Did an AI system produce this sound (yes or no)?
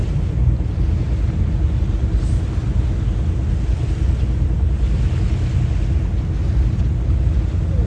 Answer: no